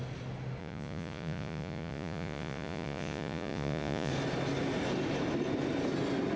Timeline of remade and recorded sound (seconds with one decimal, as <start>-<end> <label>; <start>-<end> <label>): 0.0-0.6 recorded; 0.6-4.1 remade; 4.1-6.4 recorded